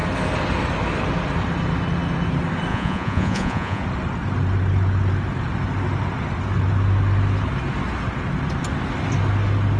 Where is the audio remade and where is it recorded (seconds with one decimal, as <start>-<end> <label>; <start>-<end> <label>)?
0.0-2.7 recorded; 2.7-3.8 remade; 3.8-9.8 recorded